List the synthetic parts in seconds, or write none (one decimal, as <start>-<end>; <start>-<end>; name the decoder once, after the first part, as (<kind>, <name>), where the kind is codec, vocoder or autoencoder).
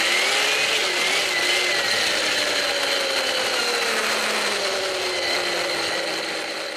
none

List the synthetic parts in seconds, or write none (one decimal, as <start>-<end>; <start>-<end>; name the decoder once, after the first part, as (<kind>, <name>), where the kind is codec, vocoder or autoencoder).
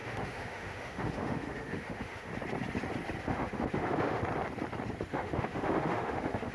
0.0-2.3 (autoencoder, DAC-VAE); 3.2-4.2; 5.1-6.5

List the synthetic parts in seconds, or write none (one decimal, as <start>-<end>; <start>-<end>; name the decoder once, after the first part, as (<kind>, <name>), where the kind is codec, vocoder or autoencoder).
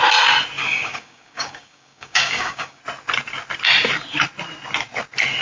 0.6-2.8 (codec, DAC)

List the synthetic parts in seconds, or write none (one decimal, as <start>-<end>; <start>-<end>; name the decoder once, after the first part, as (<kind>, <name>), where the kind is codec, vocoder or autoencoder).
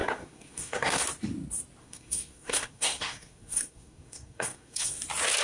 0.0-1.0 (codec, SNAC); 1.8-5.0